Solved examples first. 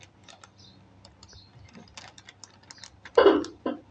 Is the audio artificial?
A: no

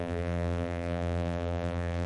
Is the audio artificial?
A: yes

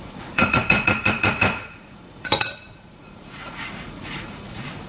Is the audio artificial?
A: yes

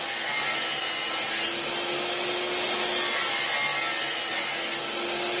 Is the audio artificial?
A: no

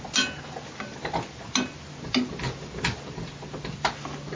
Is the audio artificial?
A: no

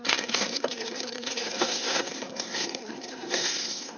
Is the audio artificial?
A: yes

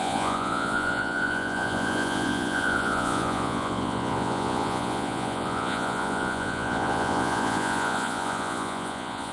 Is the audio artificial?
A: yes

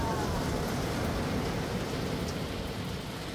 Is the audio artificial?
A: no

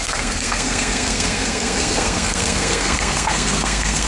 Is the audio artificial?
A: yes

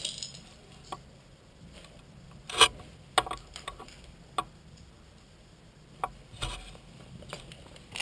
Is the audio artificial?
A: no